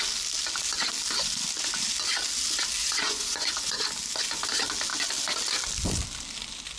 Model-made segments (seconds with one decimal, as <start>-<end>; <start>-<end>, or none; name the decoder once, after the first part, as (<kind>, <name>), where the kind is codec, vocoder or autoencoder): 2.8-3.8 (vocoder, Vocos)